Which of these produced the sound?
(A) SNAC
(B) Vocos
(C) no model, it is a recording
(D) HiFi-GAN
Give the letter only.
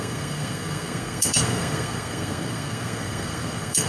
A